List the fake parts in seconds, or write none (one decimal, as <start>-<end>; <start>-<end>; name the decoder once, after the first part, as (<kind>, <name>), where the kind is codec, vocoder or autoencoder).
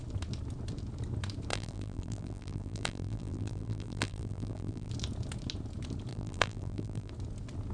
1.5-4.9 (vocoder, BigVGAN v2); 6.1-7.1